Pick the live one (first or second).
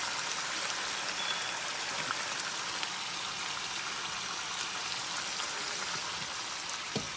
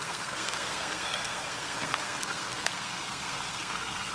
first